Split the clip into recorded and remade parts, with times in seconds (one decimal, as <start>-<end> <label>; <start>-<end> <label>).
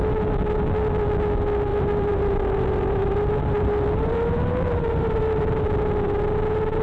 0.0-1.7 recorded; 1.7-5.6 remade; 5.6-6.8 recorded